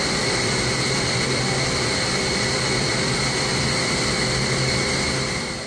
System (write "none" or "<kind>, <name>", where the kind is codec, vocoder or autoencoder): none